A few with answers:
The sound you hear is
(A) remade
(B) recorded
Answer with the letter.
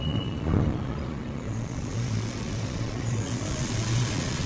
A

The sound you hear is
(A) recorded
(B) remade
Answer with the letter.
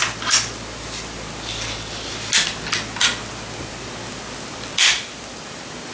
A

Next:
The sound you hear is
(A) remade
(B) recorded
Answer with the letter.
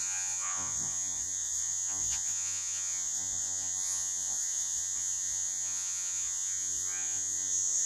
A